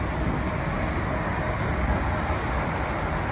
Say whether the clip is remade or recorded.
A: recorded